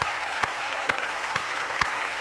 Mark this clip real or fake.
fake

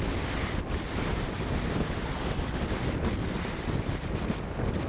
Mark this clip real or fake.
real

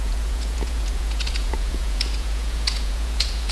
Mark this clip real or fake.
fake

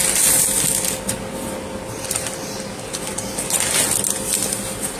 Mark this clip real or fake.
real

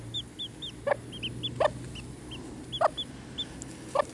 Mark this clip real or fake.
real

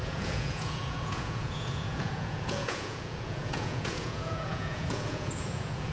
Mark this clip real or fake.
fake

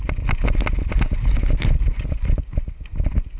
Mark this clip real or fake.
real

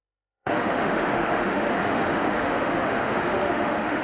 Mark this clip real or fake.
fake